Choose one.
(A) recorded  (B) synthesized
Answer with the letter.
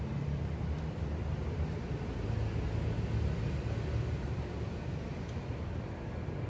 A